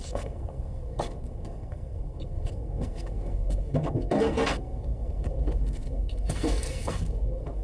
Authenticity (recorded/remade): remade